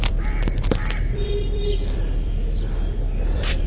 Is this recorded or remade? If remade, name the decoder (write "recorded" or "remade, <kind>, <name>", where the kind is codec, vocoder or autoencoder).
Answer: remade, vocoder, BigVGAN v2